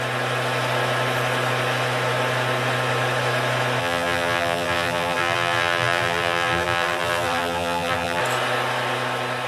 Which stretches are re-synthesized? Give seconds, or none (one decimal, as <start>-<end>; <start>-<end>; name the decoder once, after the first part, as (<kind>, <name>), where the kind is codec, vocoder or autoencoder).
3.8-8.2 (vocoder, BigVGAN v2)